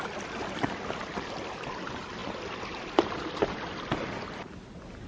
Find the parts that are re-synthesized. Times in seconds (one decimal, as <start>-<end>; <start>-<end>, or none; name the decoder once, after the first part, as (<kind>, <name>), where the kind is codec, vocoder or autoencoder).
none